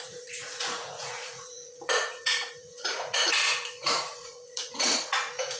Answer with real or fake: fake